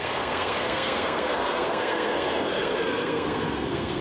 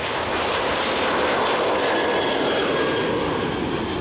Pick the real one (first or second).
second